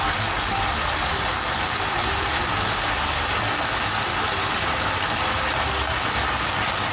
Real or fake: real